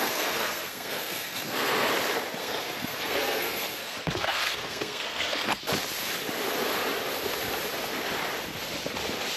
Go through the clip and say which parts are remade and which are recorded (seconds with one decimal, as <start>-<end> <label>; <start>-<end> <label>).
0.0-1.9 remade; 1.9-2.4 recorded; 2.4-5.6 remade; 5.6-9.4 recorded